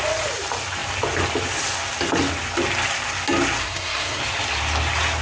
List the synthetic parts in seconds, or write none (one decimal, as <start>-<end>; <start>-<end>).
3.6-4.2